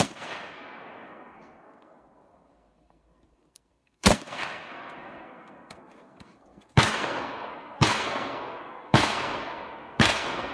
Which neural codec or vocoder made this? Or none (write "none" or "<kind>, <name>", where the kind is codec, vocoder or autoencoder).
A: codec, SNAC